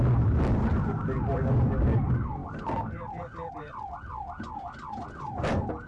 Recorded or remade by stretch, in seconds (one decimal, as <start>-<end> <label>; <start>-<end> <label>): 0.0-5.9 recorded